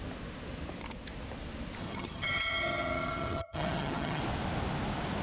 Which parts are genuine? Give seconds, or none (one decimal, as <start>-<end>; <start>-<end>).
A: 0.0-1.8; 4.2-5.2